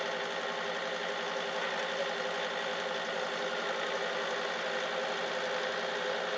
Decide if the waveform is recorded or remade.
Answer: recorded